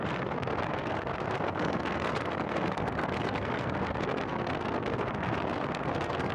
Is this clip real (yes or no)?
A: no